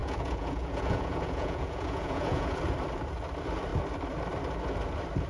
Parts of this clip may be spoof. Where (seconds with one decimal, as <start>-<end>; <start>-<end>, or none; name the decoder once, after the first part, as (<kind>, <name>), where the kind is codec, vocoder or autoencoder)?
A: 0.0-2.6 (vocoder, Vocos)